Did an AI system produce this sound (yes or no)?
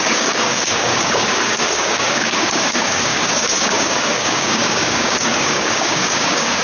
yes